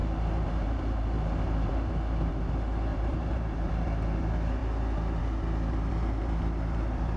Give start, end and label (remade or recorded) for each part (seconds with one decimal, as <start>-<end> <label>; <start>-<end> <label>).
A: 0.0-1.7 remade; 1.7-2.9 recorded; 2.9-3.7 remade; 3.7-7.2 recorded